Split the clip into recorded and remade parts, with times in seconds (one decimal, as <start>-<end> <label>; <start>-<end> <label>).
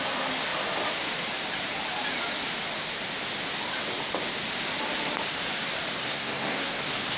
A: 0.0-6.0 recorded; 6.0-6.8 remade; 6.8-7.2 recorded